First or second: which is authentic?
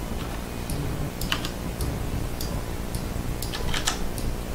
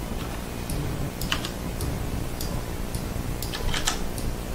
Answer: first